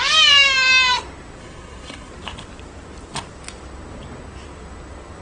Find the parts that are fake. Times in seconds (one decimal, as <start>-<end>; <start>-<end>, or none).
1.4-2.1